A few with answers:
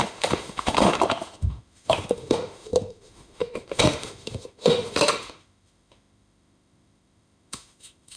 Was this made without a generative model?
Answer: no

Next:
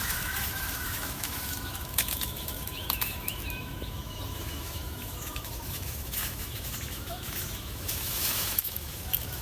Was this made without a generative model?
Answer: no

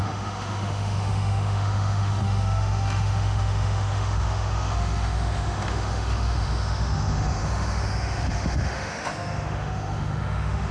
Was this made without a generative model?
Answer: no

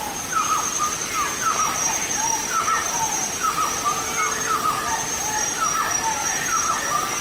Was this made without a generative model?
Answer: yes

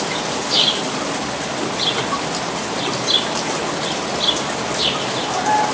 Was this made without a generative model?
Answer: yes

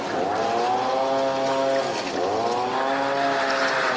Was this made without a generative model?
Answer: yes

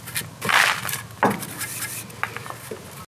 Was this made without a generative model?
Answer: yes